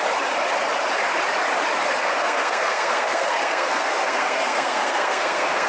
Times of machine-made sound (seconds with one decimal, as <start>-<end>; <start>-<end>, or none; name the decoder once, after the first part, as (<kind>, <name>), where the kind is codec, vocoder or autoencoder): 2.0-5.7 (codec, SNAC)